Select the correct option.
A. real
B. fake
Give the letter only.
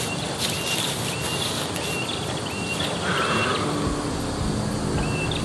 A